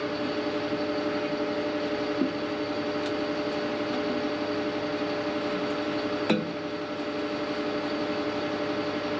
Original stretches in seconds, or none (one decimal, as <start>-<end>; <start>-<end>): 0.0-9.2